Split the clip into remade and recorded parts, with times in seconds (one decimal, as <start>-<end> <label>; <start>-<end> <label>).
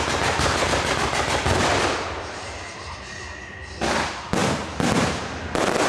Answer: 0.0-5.9 recorded